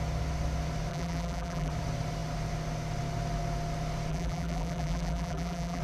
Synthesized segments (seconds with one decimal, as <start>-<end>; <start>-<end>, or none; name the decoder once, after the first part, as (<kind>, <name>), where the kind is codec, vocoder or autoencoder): 0.9-1.7 (vocoder, BigVGAN v2); 4.1-5.8